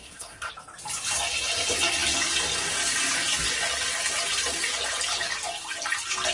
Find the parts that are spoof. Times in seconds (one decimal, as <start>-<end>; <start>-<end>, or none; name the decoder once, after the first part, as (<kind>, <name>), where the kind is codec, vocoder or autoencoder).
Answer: 0.0-0.5 (codec, SNAC)